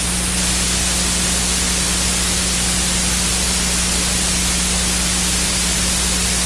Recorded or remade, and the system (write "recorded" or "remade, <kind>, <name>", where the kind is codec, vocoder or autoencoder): recorded